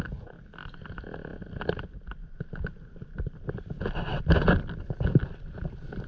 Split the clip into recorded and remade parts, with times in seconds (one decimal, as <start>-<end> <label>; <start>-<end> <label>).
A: 0.0-6.1 recorded